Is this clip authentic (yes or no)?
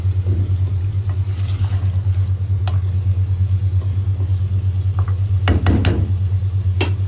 yes